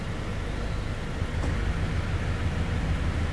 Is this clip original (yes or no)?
yes